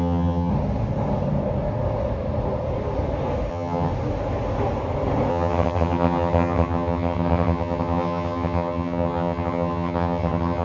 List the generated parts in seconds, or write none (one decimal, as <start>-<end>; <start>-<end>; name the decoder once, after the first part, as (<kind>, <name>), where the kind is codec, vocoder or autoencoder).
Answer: 0.0-0.5 (vocoder, HiFi-GAN); 3.5-3.9; 5.3-10.6